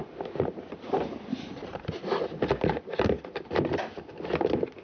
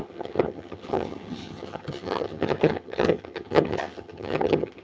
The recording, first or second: first